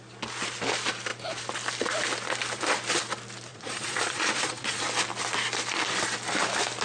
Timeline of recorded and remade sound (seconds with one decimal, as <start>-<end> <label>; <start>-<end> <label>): 0.0-3.5 recorded; 3.5-4.8 remade; 4.8-6.8 recorded